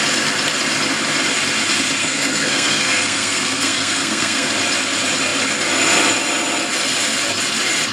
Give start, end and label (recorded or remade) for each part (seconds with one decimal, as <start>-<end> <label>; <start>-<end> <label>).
0.0-2.0 recorded; 2.0-4.5 remade; 4.5-7.9 recorded